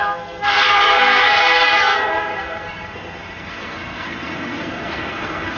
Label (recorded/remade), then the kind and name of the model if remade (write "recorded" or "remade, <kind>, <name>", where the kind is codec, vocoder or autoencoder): remade, codec, SNAC